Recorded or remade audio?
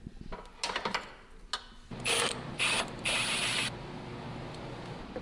recorded